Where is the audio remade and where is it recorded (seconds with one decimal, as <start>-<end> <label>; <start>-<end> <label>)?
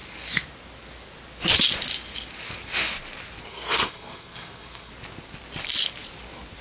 0.0-3.5 recorded; 3.5-4.9 remade; 4.9-6.6 recorded